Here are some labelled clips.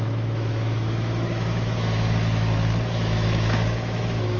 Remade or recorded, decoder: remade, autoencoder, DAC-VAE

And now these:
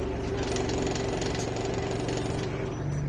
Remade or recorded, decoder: recorded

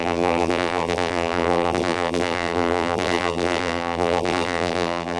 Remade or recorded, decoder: remade, vocoder, BigVGAN v2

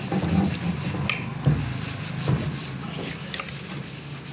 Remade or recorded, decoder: recorded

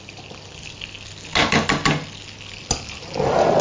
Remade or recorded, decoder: recorded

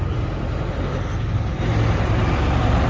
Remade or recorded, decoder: recorded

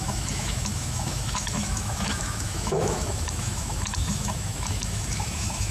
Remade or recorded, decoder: remade, autoencoder, DAC-VAE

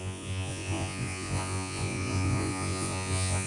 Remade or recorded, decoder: remade, vocoder, Vocos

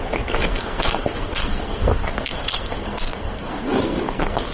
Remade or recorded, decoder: remade, codec, SNAC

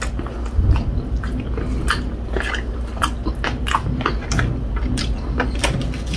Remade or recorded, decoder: recorded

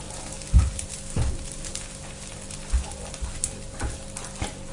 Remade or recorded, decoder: recorded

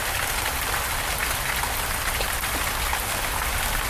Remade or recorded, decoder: recorded